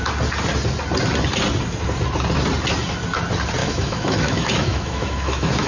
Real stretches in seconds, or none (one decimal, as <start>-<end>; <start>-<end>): 0.0-3.6